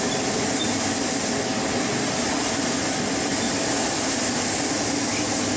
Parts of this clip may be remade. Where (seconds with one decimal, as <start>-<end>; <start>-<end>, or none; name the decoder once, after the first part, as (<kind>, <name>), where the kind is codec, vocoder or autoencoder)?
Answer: none